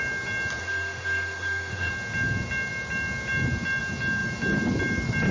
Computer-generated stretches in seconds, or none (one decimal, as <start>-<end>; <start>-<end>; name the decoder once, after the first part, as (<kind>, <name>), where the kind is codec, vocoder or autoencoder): 0.6-1.9 (autoencoder, DAC-VAE)